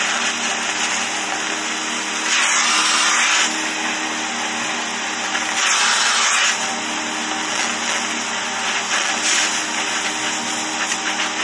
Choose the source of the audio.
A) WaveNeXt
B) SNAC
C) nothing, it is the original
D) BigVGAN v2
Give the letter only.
C